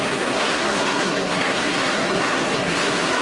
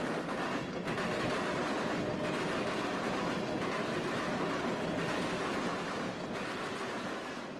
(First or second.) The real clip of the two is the second